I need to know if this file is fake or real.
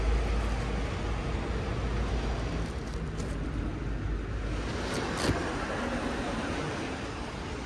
real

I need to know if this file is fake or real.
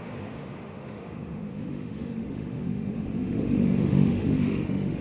fake